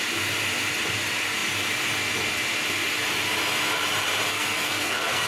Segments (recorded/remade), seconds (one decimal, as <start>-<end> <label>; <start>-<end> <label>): 0.0-4.3 recorded; 4.3-5.3 remade